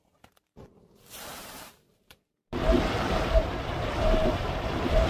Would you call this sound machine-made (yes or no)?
yes